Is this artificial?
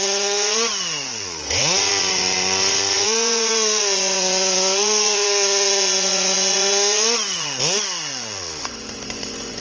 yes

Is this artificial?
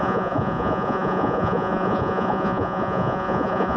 yes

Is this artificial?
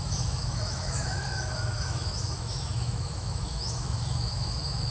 yes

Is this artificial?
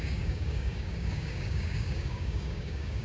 yes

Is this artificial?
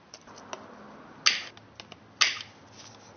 no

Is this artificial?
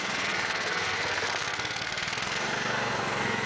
yes